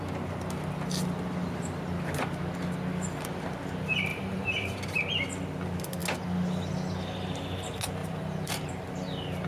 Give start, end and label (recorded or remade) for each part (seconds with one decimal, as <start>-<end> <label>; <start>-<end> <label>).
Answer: 0.0-4.1 recorded; 4.1-4.8 remade; 4.8-8.0 recorded; 8.0-8.7 remade; 8.7-9.5 recorded